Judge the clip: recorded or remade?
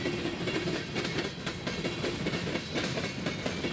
remade